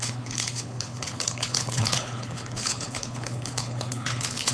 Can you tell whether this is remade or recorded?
remade